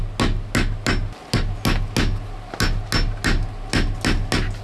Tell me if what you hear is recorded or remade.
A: recorded